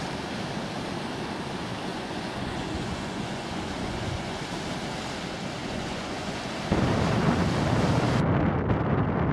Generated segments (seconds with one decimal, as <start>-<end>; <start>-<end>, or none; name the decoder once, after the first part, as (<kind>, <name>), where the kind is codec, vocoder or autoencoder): 1.9-4.4 (vocoder, Vocos); 5.6-6.5